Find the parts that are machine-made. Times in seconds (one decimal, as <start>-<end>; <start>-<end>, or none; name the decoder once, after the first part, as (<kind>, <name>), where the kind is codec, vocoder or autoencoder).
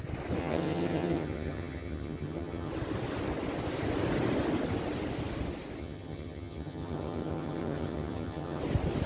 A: 0.4-2.7 (vocoder, HiFi-GAN); 5.8-8.6